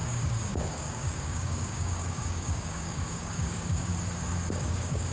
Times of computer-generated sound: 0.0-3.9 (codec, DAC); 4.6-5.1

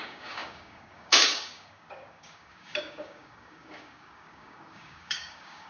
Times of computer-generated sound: 0.0-5.7 (codec, DAC)

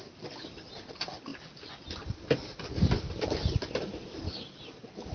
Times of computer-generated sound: none

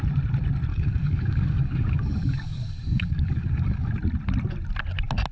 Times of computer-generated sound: 0.7-3.9 (codec, DAC)

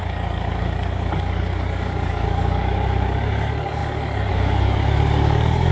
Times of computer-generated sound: 0.0-5.7 (codec, DAC)

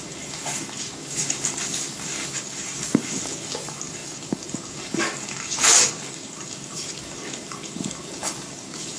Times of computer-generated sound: 0.0-9.0 (codec, DAC)

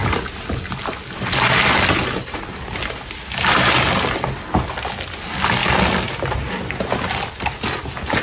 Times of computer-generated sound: none